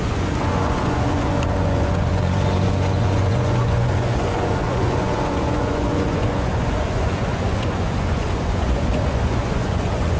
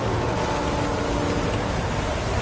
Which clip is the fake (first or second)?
first